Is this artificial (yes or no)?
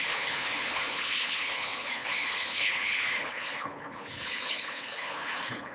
yes